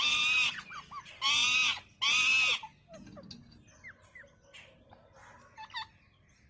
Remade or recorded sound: recorded